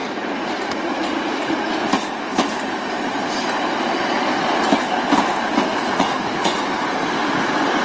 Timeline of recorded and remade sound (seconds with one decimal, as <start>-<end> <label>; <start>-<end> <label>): 0.0-1.7 remade; 1.7-5.7 recorded; 5.7-6.6 remade; 6.6-7.8 recorded